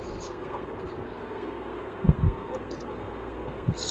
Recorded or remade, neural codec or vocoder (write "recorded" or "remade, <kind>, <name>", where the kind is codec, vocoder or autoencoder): remade, codec, SNAC